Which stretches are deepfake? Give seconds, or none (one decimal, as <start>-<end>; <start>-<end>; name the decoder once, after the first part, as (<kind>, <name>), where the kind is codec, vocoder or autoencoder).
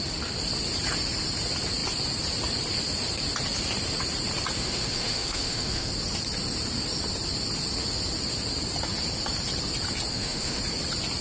4.6-5.9 (autoencoder, DAC-VAE); 10.1-10.6